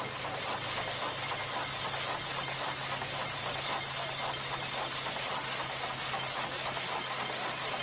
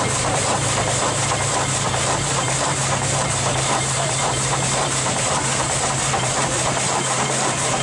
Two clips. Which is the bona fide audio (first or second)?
first